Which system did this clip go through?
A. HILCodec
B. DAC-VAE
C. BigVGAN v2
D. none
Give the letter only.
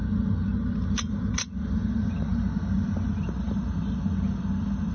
D